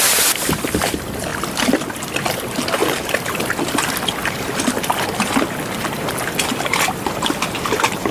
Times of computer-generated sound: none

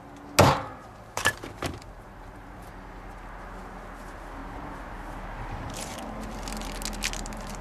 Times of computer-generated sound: 0.7-2.7 (vocoder, BigVGAN v2)

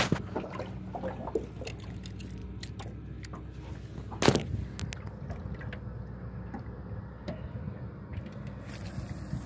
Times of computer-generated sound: none

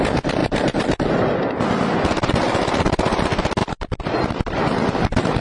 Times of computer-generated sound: 0.4-1.5 (vocoder, BigVGAN v2); 3.6-4.3

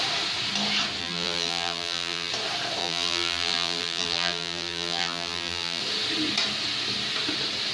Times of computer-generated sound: 1.0-2.3 (vocoder, BigVGAN v2); 2.8-5.8

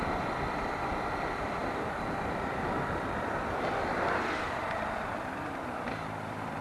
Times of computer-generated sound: 0.0-6.6 (vocoder, BigVGAN v2)

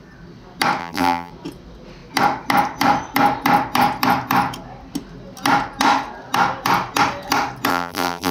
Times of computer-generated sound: 0.8-1.3 (vocoder, BigVGAN v2); 7.7-8.3

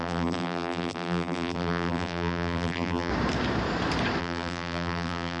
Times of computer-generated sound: 0.0-3.1 (vocoder, BigVGAN v2); 4.2-5.4